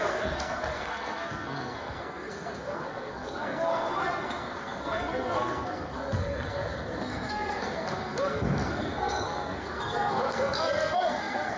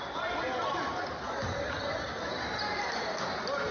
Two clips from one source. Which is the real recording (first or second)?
second